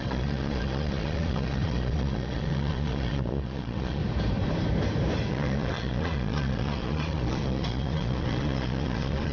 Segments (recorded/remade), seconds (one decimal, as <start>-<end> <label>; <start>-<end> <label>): 0.0-4.0 remade; 4.0-5.3 recorded; 5.3-9.3 remade